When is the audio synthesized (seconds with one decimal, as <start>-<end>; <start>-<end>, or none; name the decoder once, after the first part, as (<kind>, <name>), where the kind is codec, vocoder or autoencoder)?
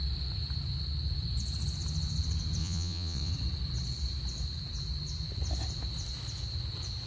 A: 2.6-3.3 (vocoder, Vocos)